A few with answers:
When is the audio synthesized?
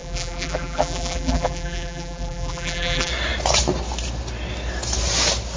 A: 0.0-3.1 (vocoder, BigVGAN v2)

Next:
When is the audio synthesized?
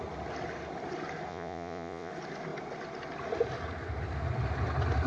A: 1.3-2.1 (vocoder, Vocos)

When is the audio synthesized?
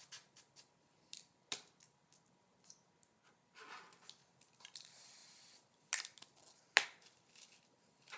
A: none